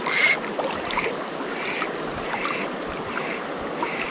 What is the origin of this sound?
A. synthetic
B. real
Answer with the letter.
B